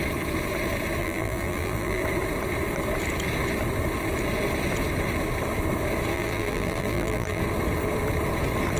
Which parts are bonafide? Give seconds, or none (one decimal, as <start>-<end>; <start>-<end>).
0.0-1.0; 2.0-6.1; 7.4-8.8